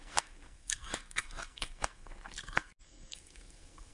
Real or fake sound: fake